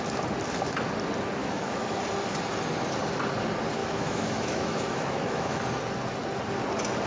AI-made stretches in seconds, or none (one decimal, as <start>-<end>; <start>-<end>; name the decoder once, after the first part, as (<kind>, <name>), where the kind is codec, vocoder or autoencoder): 1.4-2.0 (autoencoder, DAC-VAE); 3.8-5.6